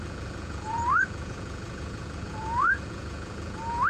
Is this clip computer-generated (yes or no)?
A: yes